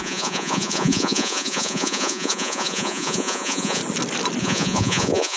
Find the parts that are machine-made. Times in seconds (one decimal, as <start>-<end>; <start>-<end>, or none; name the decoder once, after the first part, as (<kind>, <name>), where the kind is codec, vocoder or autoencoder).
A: 0.0-3.8 (vocoder, Vocos); 4.4-5.4